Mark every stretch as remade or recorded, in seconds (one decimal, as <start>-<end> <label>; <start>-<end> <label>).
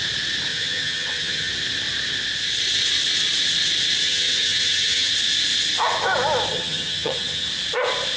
0.0-0.5 recorded; 0.5-1.5 remade; 1.5-4.0 recorded; 4.0-5.1 remade; 5.1-6.5 recorded; 6.5-7.5 remade; 7.5-8.2 recorded